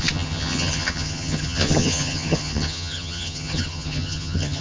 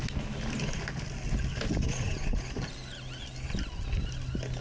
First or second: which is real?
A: second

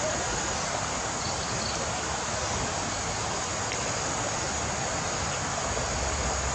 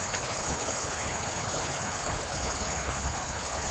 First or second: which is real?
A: first